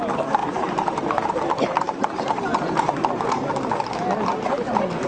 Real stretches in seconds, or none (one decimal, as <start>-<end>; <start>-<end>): 0.0-0.4; 3.5-5.1